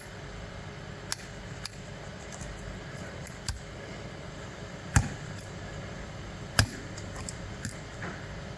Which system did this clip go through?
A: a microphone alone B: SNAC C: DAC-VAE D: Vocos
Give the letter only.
A